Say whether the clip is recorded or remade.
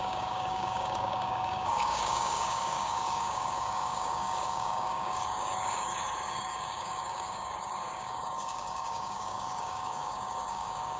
remade